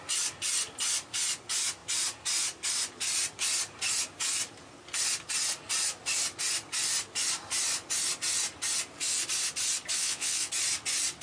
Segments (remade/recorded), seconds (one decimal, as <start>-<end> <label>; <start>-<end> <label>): 0.0-10.0 recorded; 10.0-10.5 remade; 10.5-11.2 recorded